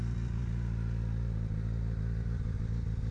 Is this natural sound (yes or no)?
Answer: yes